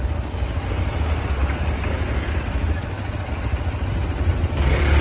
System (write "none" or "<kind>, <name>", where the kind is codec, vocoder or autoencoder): none